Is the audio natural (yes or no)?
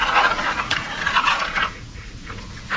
no